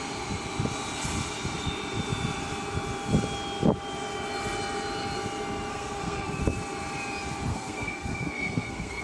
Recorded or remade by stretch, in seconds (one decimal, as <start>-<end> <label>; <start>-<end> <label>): 0.0-5.7 recorded; 5.7-6.4 remade; 6.4-7.5 recorded; 7.5-9.0 remade